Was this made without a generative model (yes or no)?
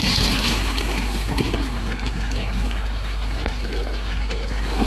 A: no